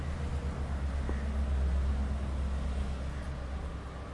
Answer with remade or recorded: recorded